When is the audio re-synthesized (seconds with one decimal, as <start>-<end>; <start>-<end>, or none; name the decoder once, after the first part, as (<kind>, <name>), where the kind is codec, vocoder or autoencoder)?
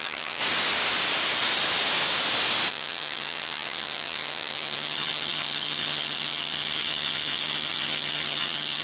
0.0-0.4 (vocoder, HiFi-GAN); 2.7-8.8